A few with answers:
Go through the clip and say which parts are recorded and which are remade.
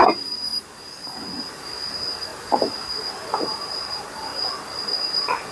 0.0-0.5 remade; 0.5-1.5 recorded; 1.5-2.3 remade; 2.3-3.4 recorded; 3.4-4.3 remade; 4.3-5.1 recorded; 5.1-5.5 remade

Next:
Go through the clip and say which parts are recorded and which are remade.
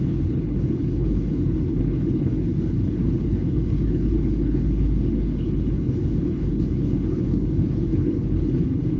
0.0-9.0 remade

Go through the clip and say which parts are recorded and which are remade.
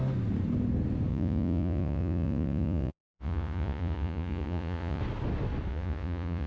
0.0-1.1 recorded; 1.1-5.0 remade; 5.0-5.7 recorded; 5.7-6.5 remade